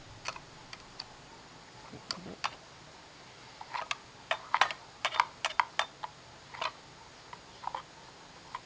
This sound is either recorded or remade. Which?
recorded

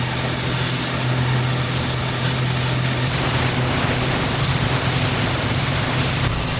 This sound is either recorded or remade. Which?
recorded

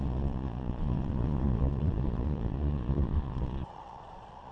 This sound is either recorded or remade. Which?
remade